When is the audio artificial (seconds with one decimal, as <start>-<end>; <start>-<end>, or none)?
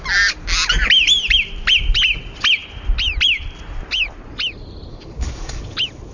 4.9-5.6